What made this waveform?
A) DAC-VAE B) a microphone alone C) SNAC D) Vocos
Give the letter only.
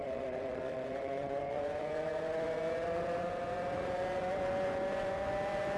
D